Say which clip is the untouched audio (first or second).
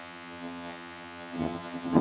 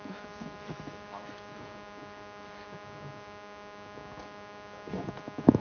second